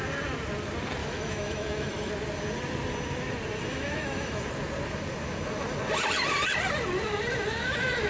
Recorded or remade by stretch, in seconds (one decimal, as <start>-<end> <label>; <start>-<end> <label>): 0.0-1.0 recorded; 1.0-2.1 remade; 2.1-3.6 recorded; 3.6-4.4 remade; 4.4-8.1 recorded

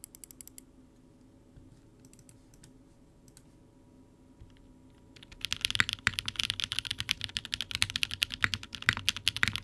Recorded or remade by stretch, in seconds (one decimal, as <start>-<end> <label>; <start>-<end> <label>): 0.0-9.6 recorded

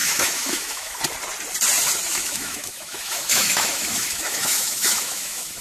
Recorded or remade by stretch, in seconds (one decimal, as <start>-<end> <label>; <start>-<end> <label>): 0.0-1.0 remade; 1.0-2.1 recorded; 2.1-5.6 remade

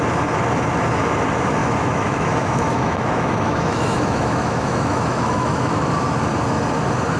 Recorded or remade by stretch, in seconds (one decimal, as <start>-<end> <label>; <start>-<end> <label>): 0.0-1.6 recorded; 1.6-5.9 remade; 5.9-7.2 recorded

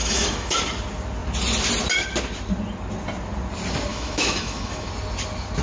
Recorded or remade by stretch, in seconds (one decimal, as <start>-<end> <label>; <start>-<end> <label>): 0.0-0.6 remade; 0.6-3.9 recorded; 3.9-4.9 remade; 4.9-5.6 recorded

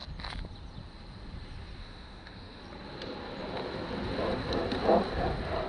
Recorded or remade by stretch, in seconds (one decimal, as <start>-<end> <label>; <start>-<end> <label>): 0.0-1.8 recorded; 1.8-2.6 remade; 2.6-5.7 recorded